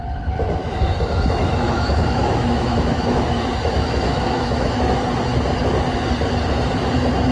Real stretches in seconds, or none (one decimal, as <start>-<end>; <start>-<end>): 0.0-0.6; 5.0-7.3